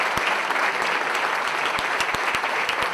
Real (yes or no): yes